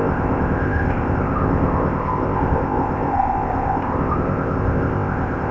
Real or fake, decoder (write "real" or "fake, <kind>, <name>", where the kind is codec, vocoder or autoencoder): fake, codec, ZipCodec